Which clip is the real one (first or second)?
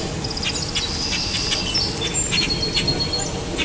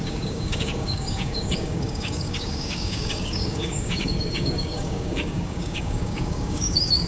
first